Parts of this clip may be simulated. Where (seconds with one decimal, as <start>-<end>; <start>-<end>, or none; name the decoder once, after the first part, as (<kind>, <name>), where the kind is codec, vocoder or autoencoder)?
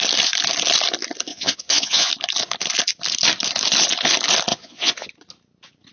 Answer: 1.3-2.1 (vocoder, Vocos); 4.5-5.1